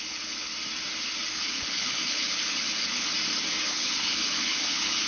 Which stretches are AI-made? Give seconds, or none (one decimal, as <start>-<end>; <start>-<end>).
0.0-0.5; 1.3-3.1; 3.7-5.1